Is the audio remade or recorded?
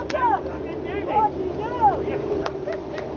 recorded